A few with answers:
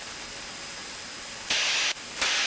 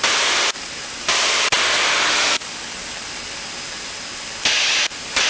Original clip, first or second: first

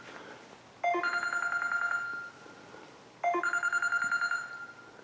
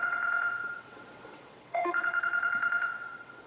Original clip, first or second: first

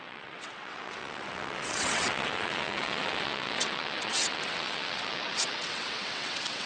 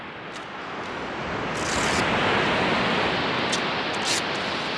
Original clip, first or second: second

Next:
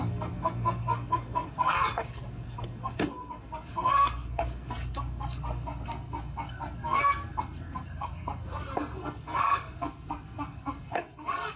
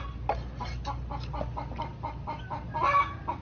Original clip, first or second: second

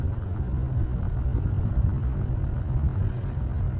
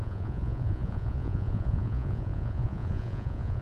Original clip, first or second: first